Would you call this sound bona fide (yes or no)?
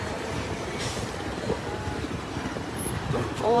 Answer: no